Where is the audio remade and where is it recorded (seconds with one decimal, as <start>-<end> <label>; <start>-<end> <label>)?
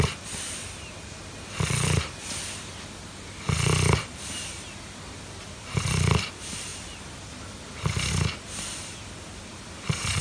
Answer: 0.0-10.2 recorded